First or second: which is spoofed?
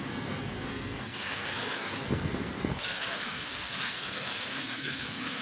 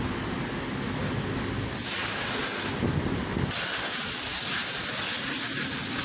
first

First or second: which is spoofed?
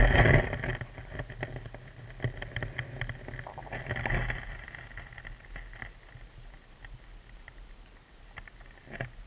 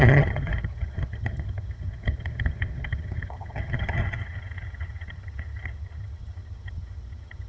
second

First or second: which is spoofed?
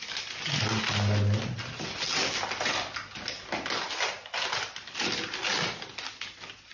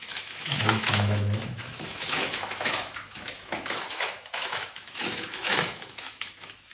second